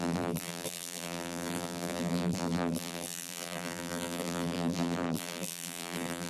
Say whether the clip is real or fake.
fake